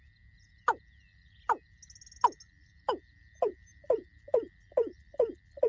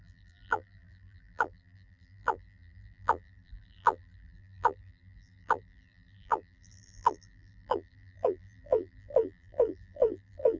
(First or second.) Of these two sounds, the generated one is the second